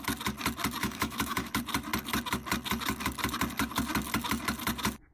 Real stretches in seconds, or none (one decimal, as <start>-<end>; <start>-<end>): 0.0-0.8; 1.5-5.1